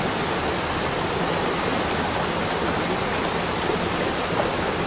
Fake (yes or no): no